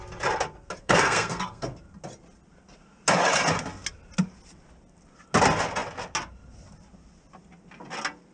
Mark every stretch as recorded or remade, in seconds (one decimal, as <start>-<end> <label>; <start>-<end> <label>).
0.0-0.8 recorded; 0.8-1.7 remade; 1.7-8.3 recorded